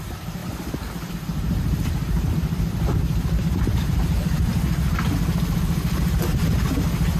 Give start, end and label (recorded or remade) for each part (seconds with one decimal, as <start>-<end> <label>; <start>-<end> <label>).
0.0-0.4 remade; 0.4-1.1 recorded; 1.1-4.5 remade; 4.5-5.6 recorded; 5.6-7.2 remade